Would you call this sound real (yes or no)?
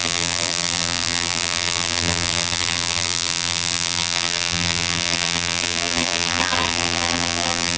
no